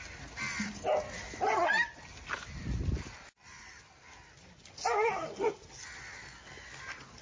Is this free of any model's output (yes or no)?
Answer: yes